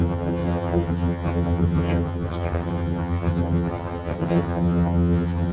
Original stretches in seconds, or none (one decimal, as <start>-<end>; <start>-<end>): none